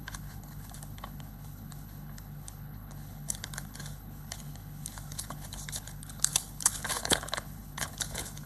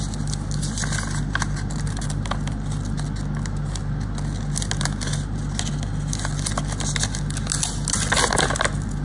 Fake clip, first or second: first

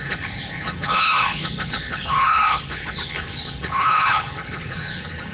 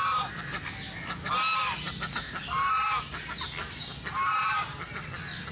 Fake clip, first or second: first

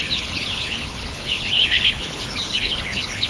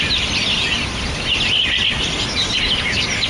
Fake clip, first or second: first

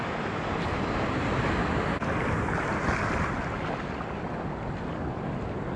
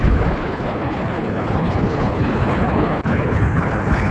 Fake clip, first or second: second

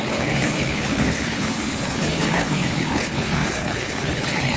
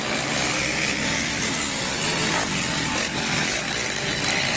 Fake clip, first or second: first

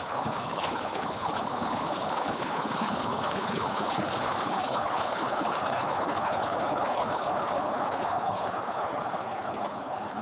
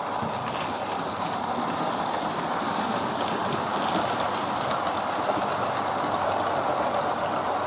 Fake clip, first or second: first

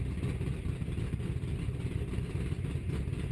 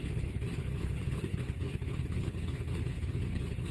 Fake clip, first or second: second